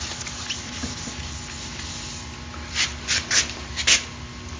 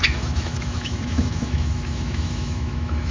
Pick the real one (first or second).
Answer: first